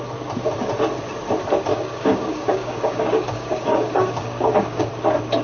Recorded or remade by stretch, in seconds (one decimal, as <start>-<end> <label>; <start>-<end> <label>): 0.0-1.7 recorded; 1.7-4.9 remade; 4.9-5.4 recorded